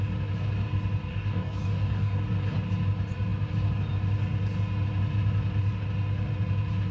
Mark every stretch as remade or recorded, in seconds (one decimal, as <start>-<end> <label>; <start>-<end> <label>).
0.0-1.1 recorded; 1.1-2.2 remade; 2.2-6.9 recorded